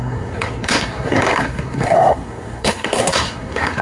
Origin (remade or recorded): remade